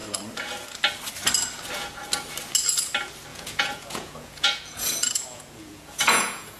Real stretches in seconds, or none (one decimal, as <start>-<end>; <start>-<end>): 0.0-3.3